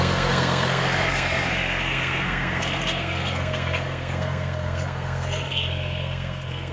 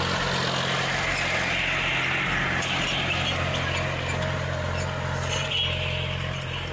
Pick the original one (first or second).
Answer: second